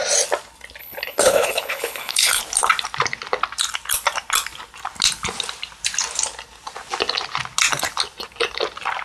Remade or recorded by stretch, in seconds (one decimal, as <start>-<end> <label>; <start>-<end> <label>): 0.0-0.8 recorded; 0.8-2.4 remade; 2.4-9.0 recorded